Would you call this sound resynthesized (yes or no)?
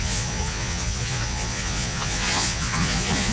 yes